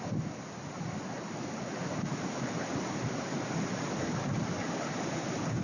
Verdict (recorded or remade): recorded